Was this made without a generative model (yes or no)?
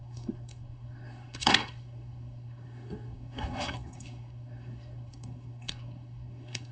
no